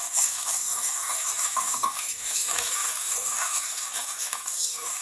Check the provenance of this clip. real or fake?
fake